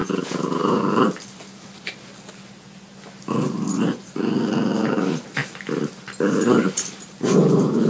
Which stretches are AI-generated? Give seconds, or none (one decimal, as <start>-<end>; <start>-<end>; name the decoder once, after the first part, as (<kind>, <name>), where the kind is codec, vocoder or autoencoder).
0.0-0.8 (vocoder, Vocos)